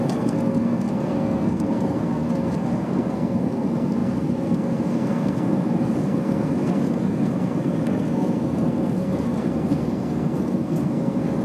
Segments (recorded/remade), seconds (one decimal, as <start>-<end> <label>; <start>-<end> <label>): 0.0-11.4 remade